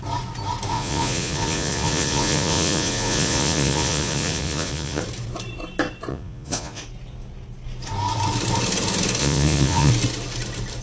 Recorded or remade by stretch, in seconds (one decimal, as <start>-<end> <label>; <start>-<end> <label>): 0.0-0.7 recorded; 0.7-5.0 remade; 5.0-6.1 recorded; 6.1-6.8 remade; 6.8-9.2 recorded; 9.2-9.9 remade; 9.9-10.8 recorded